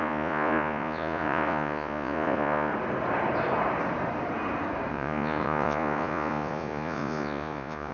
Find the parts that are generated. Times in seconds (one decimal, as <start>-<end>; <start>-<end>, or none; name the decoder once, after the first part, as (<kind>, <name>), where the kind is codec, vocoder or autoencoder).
0.0-2.7 (vocoder, Vocos); 4.9-7.9